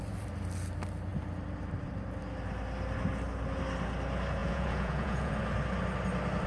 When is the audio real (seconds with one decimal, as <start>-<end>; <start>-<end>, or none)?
0.0-4.4; 5.3-6.5

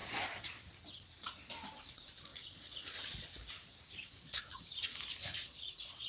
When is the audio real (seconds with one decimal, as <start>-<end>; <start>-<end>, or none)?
1.5-2.3; 4.6-5.4

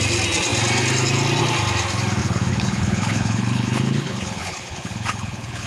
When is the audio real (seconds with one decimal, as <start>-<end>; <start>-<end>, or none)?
0.0-2.2

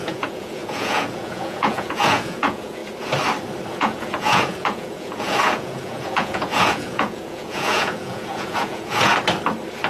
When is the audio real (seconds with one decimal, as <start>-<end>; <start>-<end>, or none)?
2.8-3.7; 9.1-9.9

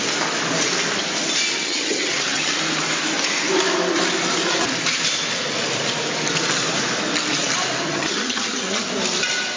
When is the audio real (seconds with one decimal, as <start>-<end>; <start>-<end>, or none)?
0.0-1.6; 2.6-7.9; 8.9-9.6